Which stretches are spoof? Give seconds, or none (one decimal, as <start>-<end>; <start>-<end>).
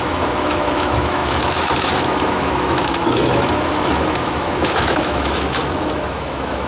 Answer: 0.0-6.7